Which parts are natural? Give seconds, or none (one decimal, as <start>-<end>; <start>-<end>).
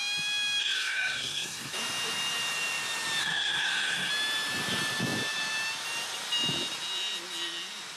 0.0-0.6; 1.7-3.2; 4.1-8.0